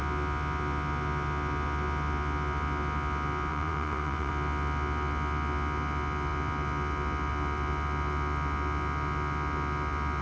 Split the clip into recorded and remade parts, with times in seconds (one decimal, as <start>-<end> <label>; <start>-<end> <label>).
0.0-3.5 recorded; 3.5-4.3 remade; 4.3-10.2 recorded

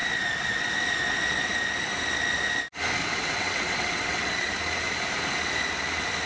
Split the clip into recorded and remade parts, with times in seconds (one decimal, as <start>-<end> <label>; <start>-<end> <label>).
0.0-3.0 recorded; 3.0-4.5 remade; 4.5-6.3 recorded

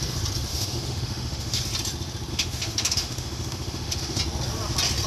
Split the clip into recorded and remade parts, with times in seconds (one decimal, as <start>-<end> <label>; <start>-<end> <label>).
0.0-0.5 recorded; 0.5-1.6 remade; 1.6-2.3 recorded; 2.3-4.2 remade; 4.2-5.1 recorded